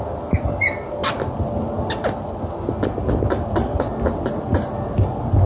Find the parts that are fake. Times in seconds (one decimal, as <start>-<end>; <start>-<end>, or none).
none